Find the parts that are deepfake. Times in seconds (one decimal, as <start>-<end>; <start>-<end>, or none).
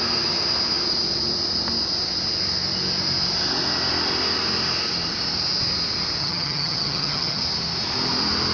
6.2-7.4